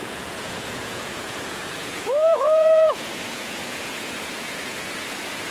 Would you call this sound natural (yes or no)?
no